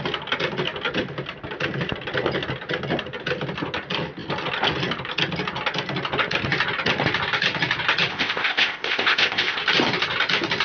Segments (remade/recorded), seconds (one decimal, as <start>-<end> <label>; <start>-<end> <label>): 0.0-8.1 recorded; 8.1-9.6 remade; 9.6-10.6 recorded